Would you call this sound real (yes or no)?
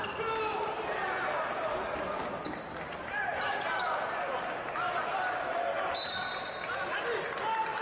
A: yes